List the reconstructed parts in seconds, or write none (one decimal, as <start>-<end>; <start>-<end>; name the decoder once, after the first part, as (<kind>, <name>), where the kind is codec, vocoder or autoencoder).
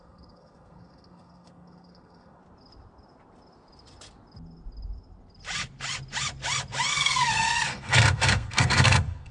0.0-2.4 (codec, SNAC); 6.9-9.3